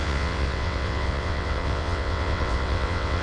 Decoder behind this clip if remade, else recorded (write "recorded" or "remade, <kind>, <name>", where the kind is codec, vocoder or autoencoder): remade, vocoder, WaveNeXt